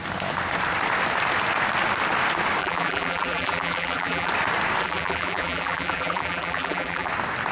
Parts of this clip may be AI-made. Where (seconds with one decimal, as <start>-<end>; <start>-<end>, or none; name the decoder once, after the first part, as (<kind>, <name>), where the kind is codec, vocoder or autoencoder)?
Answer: 2.6-4.3 (vocoder, BigVGAN v2); 4.8-7.1